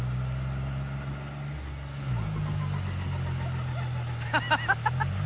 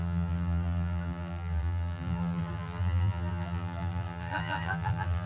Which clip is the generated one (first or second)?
second